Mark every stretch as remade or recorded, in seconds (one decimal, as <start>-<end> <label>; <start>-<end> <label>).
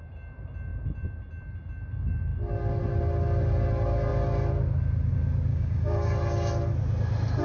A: 0.0-5.5 recorded; 5.5-6.1 remade; 6.1-7.4 recorded